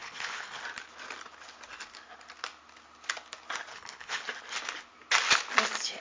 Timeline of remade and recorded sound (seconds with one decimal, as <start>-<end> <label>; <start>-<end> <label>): 0.0-0.6 remade; 0.6-3.7 recorded; 3.7-4.2 remade; 4.2-6.0 recorded